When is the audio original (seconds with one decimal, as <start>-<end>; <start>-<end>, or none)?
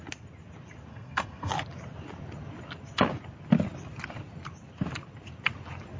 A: 0.0-0.9; 1.5-6.0